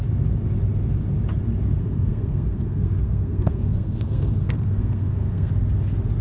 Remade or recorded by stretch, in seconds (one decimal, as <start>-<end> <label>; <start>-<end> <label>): 0.0-1.8 recorded; 1.8-5.5 remade; 5.5-6.2 recorded